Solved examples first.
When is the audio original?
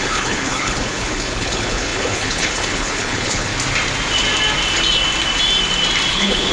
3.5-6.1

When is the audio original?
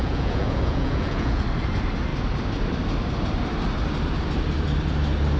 1.4-5.4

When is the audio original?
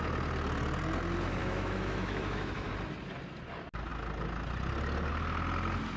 0.0-1.4; 2.7-6.0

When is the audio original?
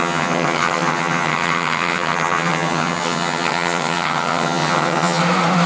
5.2-5.7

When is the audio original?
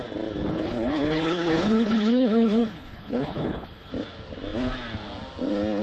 0.0-0.5; 3.9-5.8